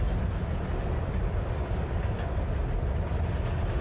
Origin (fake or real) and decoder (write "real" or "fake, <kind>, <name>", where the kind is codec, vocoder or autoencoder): real